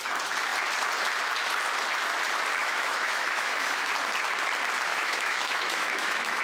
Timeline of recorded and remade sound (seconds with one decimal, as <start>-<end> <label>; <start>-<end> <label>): 0.0-2.6 recorded; 2.6-3.9 remade; 3.9-4.9 recorded; 4.9-6.4 remade